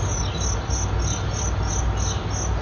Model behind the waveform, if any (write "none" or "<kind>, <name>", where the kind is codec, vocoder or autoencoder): none